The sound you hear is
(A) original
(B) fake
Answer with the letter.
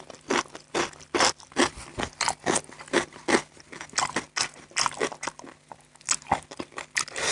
A